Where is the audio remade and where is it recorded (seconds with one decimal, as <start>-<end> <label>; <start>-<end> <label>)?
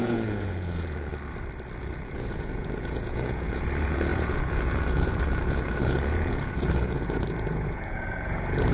0.0-1.1 remade; 1.1-1.8 recorded; 1.8-8.7 remade